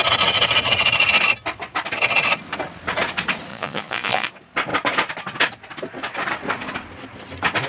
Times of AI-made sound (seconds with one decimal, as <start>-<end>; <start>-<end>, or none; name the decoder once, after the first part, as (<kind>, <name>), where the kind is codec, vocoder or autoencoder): 3.5-4.3 (vocoder, Vocos)